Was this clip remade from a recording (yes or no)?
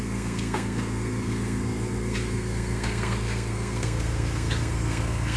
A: yes